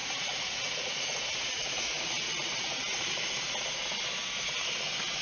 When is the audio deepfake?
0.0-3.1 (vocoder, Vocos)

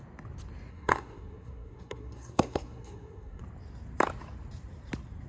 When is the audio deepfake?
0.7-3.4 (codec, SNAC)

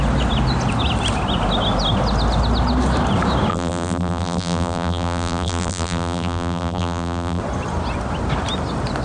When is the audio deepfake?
3.5-7.4 (vocoder, BigVGAN v2)